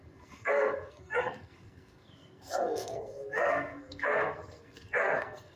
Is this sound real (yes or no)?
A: no